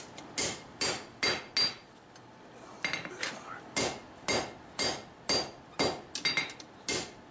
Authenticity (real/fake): real